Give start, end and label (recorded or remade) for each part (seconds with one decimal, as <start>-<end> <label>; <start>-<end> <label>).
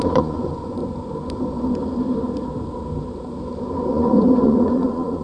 0.0-0.8 remade; 0.8-3.9 recorded; 3.9-5.2 remade